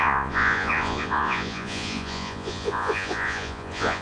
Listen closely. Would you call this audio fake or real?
fake